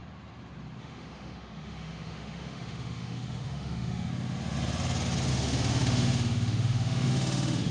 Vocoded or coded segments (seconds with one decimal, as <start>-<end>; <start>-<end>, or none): 0.8-4.1; 5.3-7.7